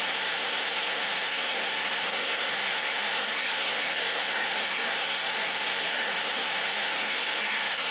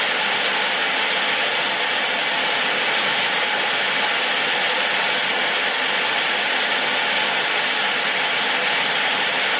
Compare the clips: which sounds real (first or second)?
second